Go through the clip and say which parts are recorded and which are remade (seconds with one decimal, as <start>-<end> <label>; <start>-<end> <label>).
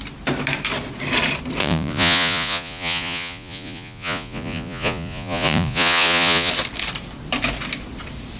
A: 0.0-1.6 recorded; 1.6-6.5 remade; 6.5-8.4 recorded